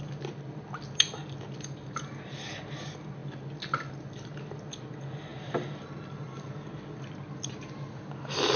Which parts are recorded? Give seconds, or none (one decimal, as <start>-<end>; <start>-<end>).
0.0-8.6

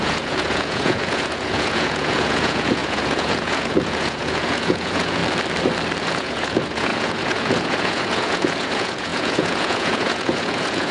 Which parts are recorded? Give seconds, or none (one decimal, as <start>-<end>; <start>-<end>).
5.2-6.0

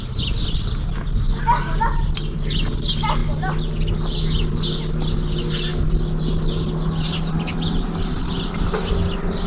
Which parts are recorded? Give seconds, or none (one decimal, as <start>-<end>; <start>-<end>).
0.0-9.5